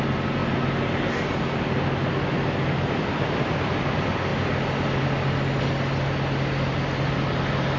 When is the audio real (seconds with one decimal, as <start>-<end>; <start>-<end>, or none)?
0.0-7.8